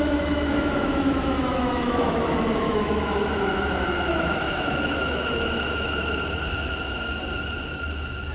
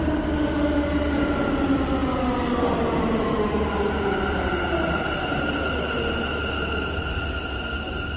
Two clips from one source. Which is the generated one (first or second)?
first